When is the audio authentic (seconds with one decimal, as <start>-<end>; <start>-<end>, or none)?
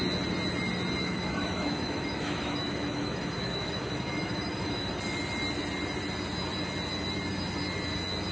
0.0-1.0; 4.9-8.3